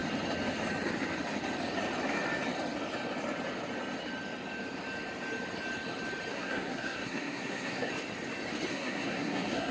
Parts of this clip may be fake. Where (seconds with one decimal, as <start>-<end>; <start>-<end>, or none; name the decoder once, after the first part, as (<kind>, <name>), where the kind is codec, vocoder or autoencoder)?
6.3-7.9 (codec, SNAC); 8.7-9.7